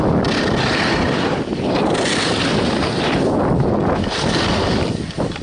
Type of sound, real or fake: real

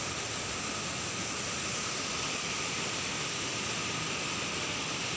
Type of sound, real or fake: real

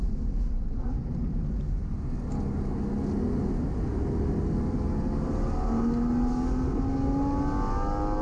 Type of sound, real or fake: real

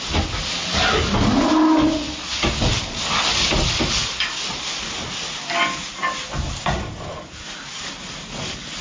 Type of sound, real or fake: real